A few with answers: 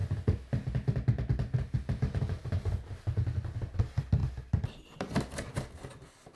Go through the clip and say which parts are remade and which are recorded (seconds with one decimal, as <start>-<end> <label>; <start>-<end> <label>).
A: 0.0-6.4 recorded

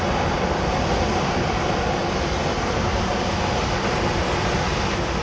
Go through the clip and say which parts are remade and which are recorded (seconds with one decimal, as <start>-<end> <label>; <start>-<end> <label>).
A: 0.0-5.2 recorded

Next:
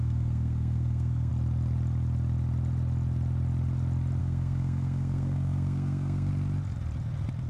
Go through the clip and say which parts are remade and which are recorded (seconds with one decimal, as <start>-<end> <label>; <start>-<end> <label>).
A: 0.0-1.3 remade; 1.3-4.2 recorded; 4.2-6.3 remade; 6.3-7.5 recorded